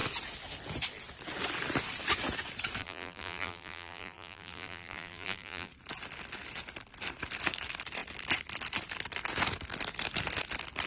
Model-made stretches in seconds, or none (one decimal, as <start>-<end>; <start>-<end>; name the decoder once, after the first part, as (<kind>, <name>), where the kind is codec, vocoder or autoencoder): 2.8-5.7 (vocoder, BigVGAN v2)